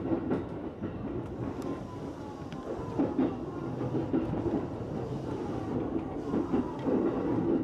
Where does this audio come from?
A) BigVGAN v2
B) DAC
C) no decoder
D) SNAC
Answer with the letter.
C